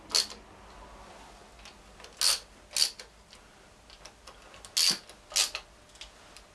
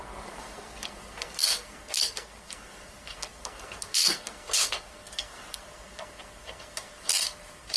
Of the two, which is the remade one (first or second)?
second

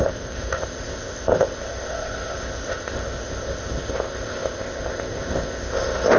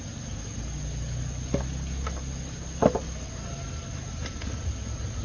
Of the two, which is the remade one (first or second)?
first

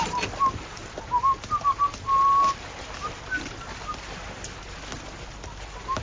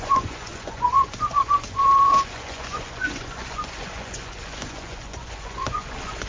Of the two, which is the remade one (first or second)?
second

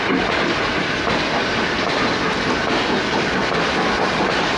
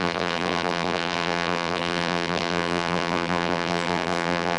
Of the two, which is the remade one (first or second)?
second